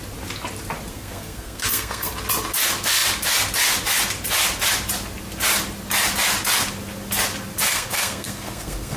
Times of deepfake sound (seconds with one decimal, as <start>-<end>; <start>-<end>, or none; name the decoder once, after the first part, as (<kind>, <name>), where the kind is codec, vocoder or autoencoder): 0.9-2.1 (codec, SNAC); 7.7-9.0